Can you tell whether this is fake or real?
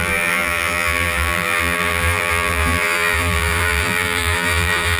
fake